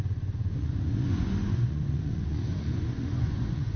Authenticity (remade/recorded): remade